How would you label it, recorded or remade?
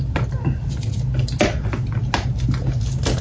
recorded